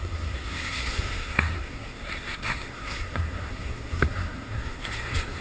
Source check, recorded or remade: remade